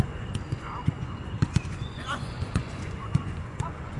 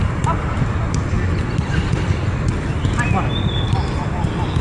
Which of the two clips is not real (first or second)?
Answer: first